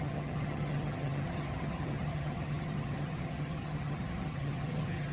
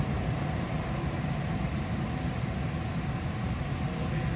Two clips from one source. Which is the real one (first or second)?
second